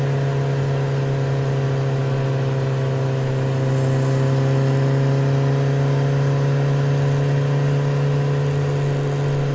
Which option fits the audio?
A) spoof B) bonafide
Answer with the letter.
B